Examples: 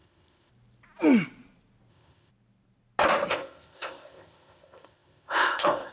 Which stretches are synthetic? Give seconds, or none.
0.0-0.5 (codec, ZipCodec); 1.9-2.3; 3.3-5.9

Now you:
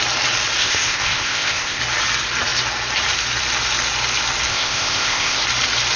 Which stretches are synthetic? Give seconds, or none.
0.6-1.8 (codec, ZipCodec); 4.5-5.4

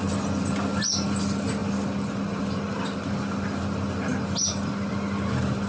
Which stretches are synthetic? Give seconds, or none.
none

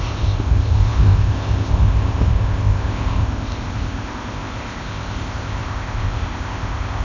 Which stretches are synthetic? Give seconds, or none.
0.0-7.0 (codec, ZipCodec)

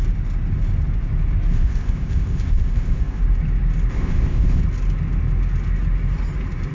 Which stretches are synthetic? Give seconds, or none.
1.5-3.2 (codec, ZipCodec); 3.9-4.6